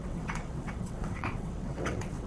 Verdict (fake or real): fake